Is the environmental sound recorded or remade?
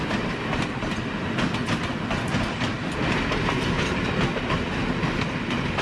recorded